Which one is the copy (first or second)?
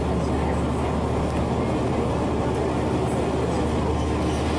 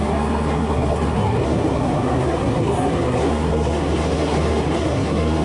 second